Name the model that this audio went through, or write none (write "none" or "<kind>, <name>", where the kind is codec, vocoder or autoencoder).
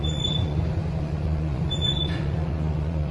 vocoder, Vocos